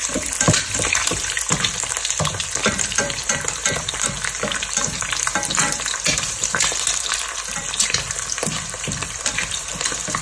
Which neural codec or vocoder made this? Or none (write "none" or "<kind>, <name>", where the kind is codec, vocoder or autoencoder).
vocoder, BigVGAN v2